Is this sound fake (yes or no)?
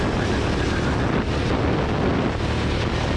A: no